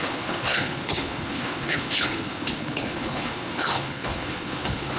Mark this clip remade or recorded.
remade